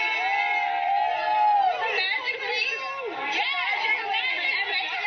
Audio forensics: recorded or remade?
recorded